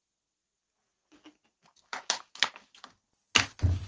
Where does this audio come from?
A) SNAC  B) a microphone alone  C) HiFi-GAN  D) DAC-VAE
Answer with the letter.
B